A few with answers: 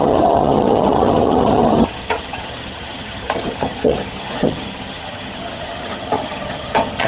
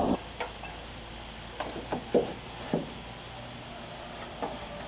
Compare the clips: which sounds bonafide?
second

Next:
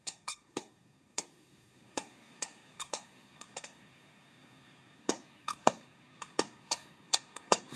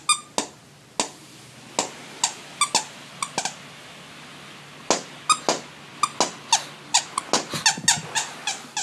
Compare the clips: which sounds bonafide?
second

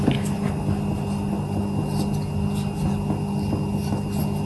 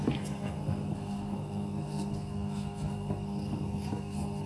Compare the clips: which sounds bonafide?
first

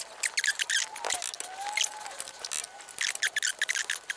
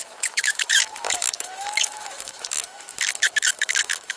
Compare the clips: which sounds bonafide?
first